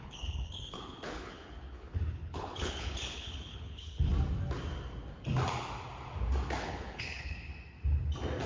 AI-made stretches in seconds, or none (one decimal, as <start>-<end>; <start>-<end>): 0.0-4.1; 6.6-7.5

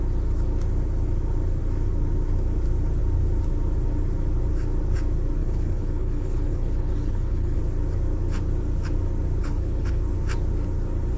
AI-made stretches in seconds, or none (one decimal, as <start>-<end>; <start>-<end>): 5.4-7.6; 9.4-10.0

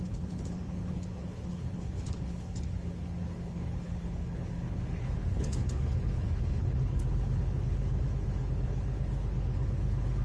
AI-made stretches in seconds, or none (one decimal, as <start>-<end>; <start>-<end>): 0.0-10.2

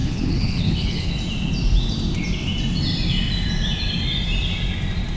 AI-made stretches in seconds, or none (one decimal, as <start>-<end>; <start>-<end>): 0.0-1.1

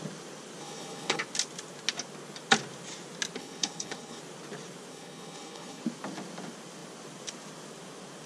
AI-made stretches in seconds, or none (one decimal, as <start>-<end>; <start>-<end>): 0.6-1.2; 3.4-4.2; 4.9-5.8